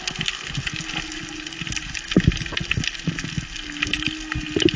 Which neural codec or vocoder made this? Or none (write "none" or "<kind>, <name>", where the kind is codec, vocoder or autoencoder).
none